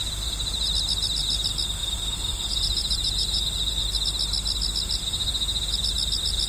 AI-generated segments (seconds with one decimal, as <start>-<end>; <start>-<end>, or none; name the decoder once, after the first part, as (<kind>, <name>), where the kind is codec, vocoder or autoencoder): 0.0-0.7 (vocoder, BigVGAN v2); 1.8-3.8